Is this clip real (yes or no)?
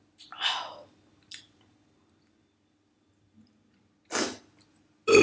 yes